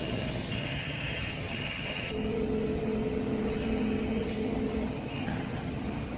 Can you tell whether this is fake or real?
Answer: fake